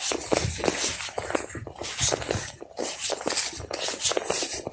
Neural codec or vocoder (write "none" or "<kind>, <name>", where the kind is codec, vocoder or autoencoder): none